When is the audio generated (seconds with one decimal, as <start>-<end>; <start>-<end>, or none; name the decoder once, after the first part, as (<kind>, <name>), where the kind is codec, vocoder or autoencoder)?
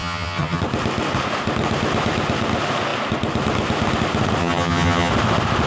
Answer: 0.0-0.6 (vocoder, HiFi-GAN); 4.4-5.1